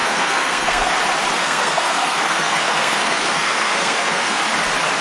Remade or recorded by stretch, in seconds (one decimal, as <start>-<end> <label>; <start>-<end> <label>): 0.0-0.9 remade; 0.9-1.4 recorded; 1.4-4.4 remade; 4.4-5.0 recorded